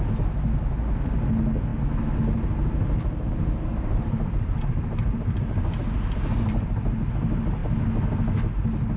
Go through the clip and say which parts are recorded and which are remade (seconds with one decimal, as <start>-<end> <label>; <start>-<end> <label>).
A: 0.0-3.7 recorded; 3.7-7.1 remade; 7.1-9.0 recorded